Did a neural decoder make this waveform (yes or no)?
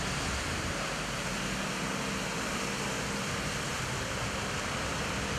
no